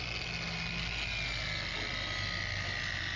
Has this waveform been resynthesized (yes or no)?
no